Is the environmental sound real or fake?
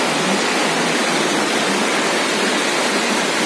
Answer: real